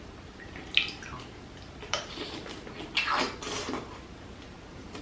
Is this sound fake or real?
real